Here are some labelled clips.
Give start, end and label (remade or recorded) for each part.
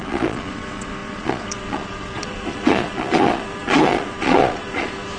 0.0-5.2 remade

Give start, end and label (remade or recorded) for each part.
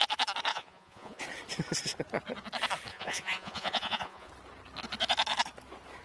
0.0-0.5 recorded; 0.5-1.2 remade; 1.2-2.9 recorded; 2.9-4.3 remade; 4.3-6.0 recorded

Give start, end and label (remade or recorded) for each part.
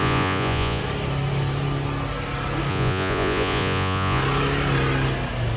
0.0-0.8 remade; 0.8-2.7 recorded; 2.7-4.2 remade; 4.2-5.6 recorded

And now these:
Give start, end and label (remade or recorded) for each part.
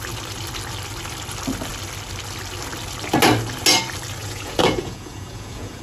0.0-4.2 recorded; 4.2-5.8 remade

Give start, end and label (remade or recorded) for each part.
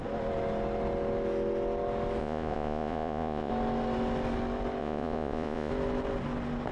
0.0-2.2 recorded; 2.2-3.5 remade; 3.5-4.8 recorded; 4.8-5.7 remade; 5.7-6.7 recorded